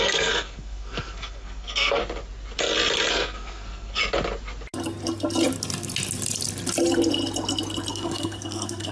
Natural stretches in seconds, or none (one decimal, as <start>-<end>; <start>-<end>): 2.0-3.1; 4.0-7.9